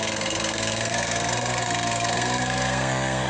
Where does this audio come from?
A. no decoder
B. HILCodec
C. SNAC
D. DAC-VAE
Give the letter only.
C